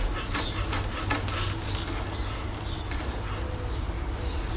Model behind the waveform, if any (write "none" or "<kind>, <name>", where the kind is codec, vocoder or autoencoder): none